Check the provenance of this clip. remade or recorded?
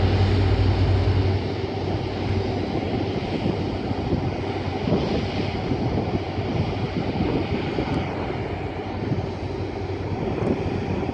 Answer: recorded